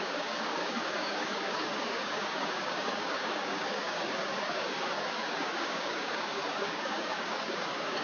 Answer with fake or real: fake